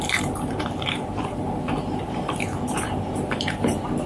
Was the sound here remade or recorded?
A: remade